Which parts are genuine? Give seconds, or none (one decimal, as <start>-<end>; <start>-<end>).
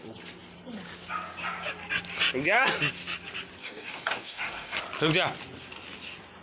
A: 0.0-3.6; 4.8-6.4